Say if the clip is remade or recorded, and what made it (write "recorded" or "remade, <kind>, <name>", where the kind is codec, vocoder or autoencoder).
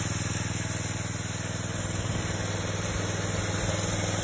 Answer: recorded